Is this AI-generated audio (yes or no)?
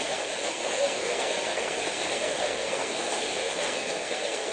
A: yes